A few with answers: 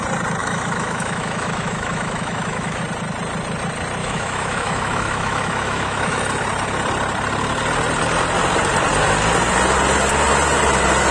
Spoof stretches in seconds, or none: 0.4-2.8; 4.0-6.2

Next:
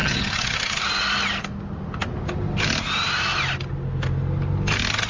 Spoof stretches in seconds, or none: 0.0-0.8

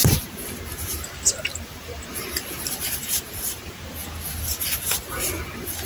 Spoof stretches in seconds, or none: 0.0-4.0; 4.9-5.9